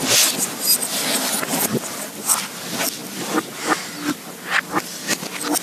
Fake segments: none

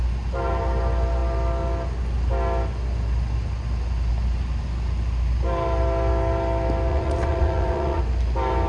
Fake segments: 6.9-8.0 (vocoder, Vocos)

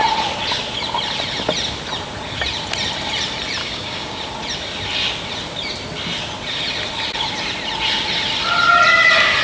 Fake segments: 3.6-4.2 (codec, DAC)

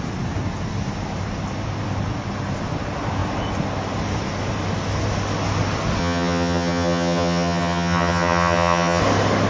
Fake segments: 6.0-9.0 (vocoder, HiFi-GAN)

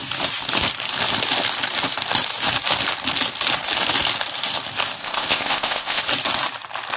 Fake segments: 5.0-6.0 (codec, ZipCodec)